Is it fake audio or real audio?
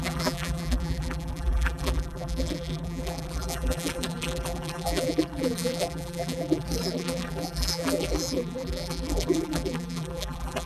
fake